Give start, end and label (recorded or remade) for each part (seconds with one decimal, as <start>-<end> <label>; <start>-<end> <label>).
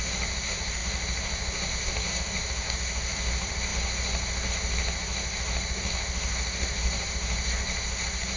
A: 0.0-8.4 remade